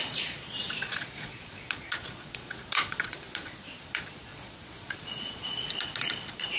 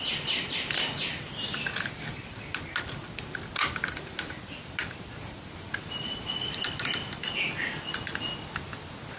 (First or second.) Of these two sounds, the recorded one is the second